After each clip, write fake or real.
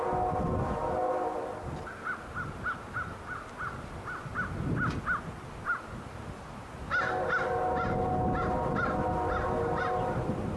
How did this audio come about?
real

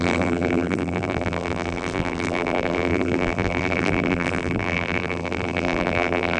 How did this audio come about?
fake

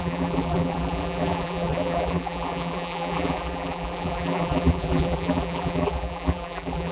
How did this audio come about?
fake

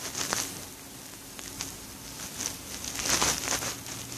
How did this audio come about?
real